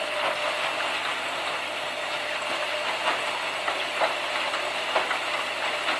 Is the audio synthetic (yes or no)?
no